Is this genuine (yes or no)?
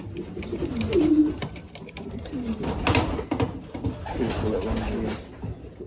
yes